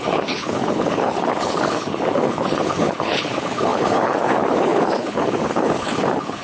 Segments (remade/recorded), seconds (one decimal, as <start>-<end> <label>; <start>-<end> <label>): 0.0-6.4 remade